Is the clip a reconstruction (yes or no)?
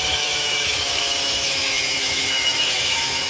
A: yes